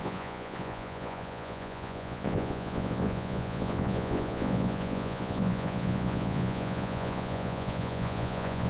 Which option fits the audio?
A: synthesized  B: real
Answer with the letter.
A